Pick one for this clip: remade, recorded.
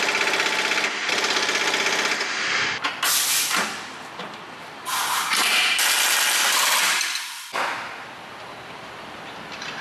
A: remade